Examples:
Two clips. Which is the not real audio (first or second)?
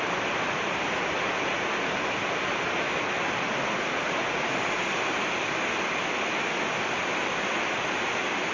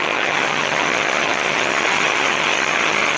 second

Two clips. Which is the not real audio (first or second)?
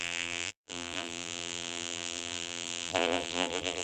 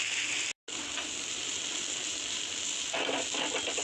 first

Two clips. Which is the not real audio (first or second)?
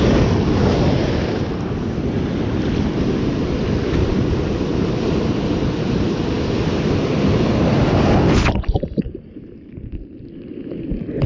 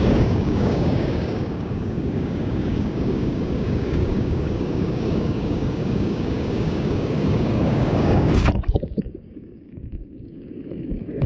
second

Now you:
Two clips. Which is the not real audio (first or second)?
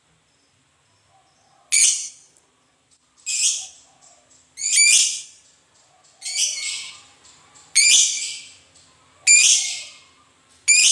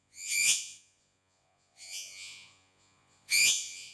second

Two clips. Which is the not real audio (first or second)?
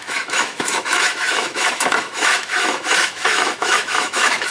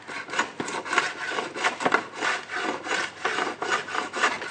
first